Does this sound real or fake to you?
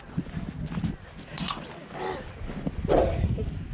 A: real